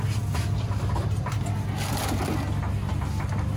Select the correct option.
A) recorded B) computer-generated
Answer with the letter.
A